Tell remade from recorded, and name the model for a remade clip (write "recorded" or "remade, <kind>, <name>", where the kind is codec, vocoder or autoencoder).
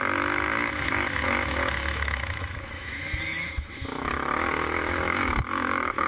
remade, autoencoder, DAC-VAE